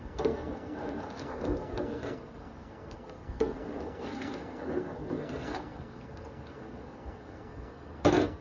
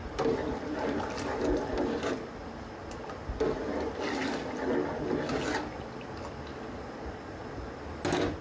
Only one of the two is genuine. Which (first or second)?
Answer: second